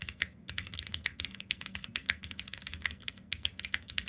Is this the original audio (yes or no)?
no